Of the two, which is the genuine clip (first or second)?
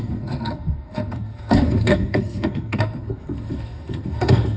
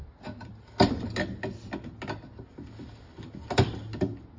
second